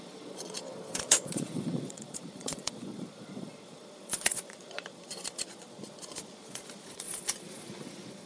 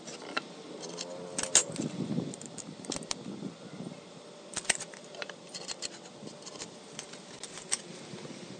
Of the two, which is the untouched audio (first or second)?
second